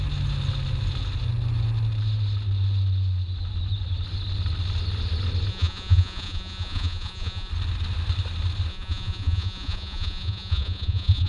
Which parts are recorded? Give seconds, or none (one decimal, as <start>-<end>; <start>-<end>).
0.0-5.5; 7.5-8.7